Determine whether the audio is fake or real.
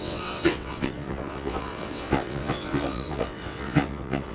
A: fake